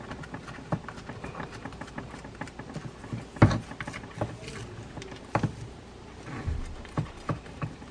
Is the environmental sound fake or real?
real